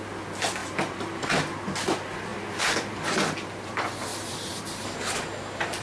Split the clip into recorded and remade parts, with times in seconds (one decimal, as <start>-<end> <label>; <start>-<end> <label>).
0.0-0.6 recorded; 0.6-1.2 remade; 1.2-2.3 recorded; 2.3-2.9 remade; 2.9-4.1 recorded; 4.1-4.8 remade; 4.8-5.8 recorded